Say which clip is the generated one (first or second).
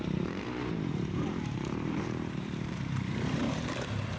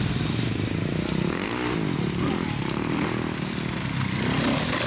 first